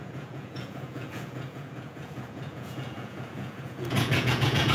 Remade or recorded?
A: remade